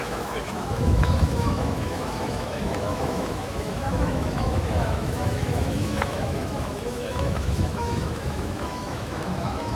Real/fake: fake